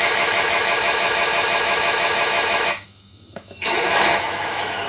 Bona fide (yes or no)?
no